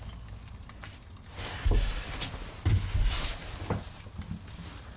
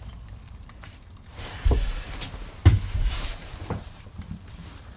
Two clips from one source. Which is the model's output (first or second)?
second